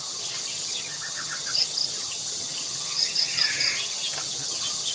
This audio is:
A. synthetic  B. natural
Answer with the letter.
A